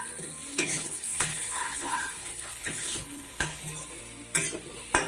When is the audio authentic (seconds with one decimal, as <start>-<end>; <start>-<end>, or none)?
0.0-0.5; 3.6-5.1